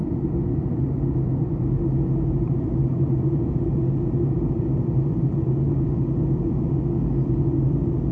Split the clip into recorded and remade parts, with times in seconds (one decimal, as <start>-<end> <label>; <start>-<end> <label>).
0.0-8.1 recorded